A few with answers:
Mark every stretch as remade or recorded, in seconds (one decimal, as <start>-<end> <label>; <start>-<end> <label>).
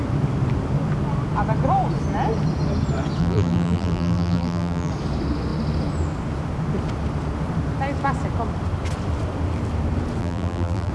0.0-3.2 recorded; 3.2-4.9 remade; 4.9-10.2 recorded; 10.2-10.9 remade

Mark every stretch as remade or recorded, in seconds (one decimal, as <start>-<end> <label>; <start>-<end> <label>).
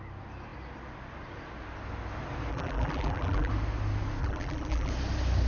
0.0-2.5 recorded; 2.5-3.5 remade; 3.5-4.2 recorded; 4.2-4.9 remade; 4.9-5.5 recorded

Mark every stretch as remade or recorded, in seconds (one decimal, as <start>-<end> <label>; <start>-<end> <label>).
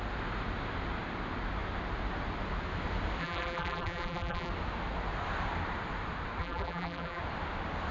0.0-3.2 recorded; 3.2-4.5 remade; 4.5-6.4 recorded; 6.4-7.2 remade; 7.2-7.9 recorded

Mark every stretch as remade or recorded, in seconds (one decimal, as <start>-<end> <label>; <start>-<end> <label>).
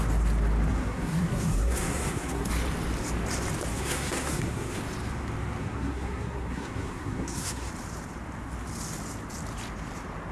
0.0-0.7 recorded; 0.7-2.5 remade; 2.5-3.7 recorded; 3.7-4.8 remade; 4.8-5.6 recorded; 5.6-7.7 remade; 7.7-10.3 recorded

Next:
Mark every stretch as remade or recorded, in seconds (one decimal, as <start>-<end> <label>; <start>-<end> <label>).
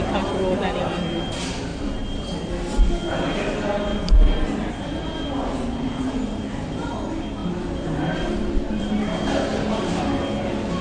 0.0-1.7 recorded; 1.7-2.5 remade; 2.5-3.9 recorded; 3.9-4.7 remade; 4.7-7.4 recorded; 7.4-9.0 remade; 9.0-10.8 recorded